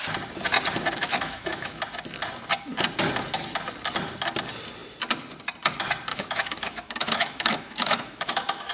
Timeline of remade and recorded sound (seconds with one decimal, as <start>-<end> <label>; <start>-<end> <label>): 0.0-1.0 recorded; 1.0-1.8 remade; 1.8-6.1 recorded; 6.1-8.7 remade